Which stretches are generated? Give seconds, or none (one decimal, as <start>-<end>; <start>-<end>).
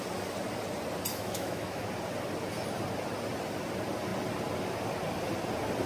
1.1-1.9